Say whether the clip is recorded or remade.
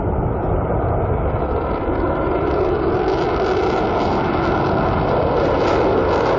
recorded